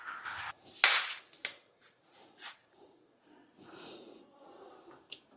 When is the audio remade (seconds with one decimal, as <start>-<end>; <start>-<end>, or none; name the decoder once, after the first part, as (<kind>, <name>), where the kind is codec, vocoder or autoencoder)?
1.5-4.7 (vocoder, Vocos)